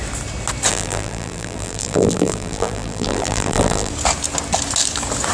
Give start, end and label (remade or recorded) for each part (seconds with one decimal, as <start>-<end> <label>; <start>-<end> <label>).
0.0-0.7 recorded; 0.7-3.9 remade; 3.9-5.3 recorded